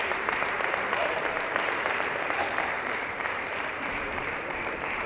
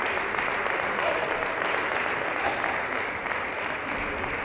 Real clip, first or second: second